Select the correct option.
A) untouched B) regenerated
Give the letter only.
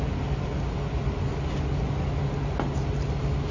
A